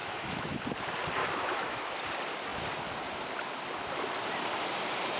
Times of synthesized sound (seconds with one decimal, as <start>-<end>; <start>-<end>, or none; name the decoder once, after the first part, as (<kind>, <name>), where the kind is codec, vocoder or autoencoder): 0.0-0.6 (autoencoder, DAC-VAE); 1.2-1.9